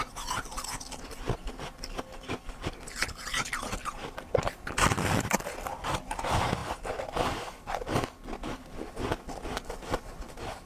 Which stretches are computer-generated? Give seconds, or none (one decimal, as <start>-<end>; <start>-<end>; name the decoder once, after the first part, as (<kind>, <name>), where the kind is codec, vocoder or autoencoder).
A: none